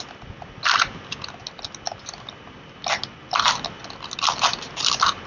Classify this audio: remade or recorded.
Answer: recorded